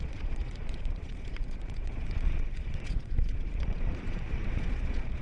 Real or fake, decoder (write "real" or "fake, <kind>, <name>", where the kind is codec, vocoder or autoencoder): fake, vocoder, Vocos